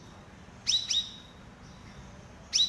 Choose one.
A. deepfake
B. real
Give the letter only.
B